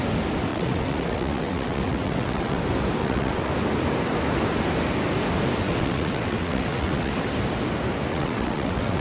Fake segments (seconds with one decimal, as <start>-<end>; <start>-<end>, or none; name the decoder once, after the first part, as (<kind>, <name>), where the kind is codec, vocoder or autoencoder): 0.5-2.6 (vocoder, WaveNeXt); 3.0-3.5; 5.6-7.1; 8.1-9.0